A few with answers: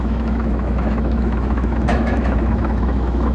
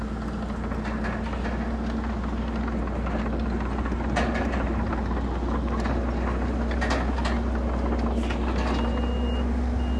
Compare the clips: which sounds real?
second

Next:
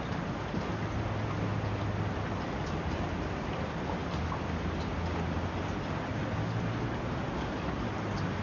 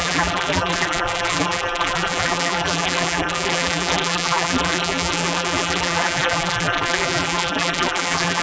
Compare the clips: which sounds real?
first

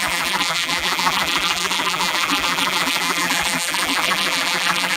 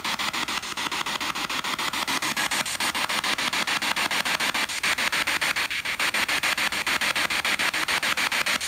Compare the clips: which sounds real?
second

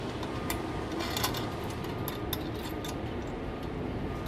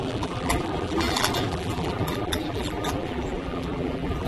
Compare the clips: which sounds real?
first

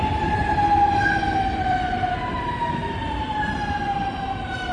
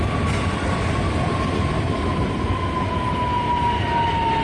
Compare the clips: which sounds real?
second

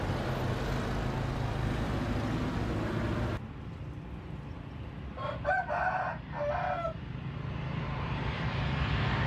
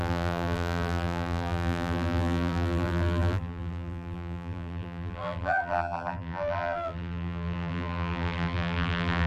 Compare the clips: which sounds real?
first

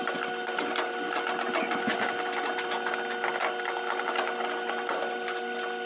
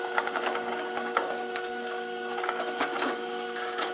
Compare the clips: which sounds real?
first